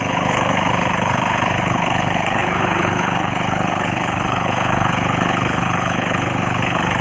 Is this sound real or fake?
fake